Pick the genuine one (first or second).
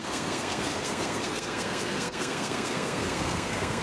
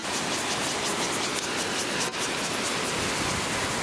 second